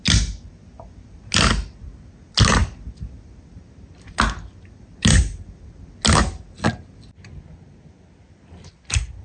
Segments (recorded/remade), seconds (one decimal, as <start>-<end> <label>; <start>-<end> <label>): 0.0-9.2 recorded